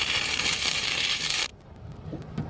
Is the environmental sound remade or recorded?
remade